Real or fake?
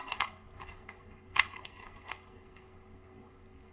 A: fake